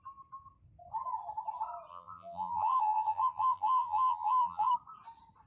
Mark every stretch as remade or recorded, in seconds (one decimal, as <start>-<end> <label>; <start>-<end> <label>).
0.0-1.9 recorded; 1.9-4.7 remade; 4.7-5.5 recorded